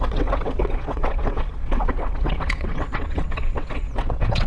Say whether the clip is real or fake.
fake